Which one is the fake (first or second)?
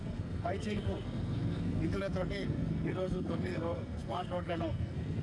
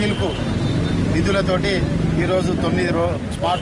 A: first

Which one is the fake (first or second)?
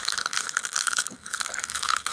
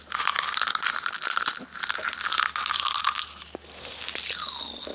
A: first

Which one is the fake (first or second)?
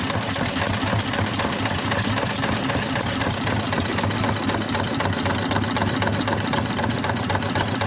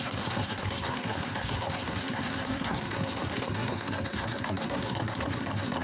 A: second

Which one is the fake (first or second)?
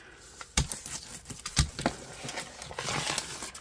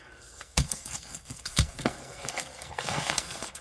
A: second